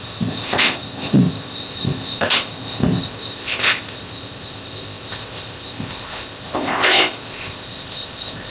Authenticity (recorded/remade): remade